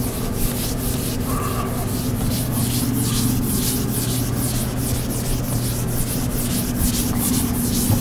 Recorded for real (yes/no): yes